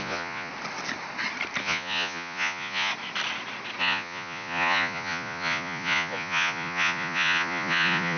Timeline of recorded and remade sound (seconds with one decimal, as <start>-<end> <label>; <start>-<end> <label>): 0.0-0.5 remade; 0.5-1.6 recorded; 1.6-2.9 remade; 2.9-3.8 recorded; 3.8-8.2 remade